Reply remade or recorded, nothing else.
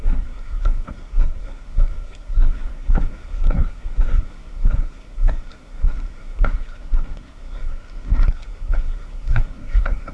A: remade